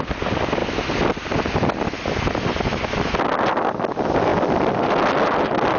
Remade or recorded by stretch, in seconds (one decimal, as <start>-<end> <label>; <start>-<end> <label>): 0.0-5.8 recorded